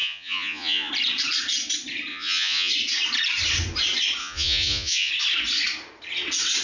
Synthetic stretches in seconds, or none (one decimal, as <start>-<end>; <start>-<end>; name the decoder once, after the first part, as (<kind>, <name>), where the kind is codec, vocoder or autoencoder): 0.0-0.9 (vocoder, Vocos); 2.1-2.7; 4.2-5.1